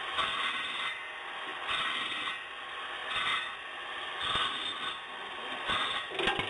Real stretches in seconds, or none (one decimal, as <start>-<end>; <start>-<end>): 0.0-6.5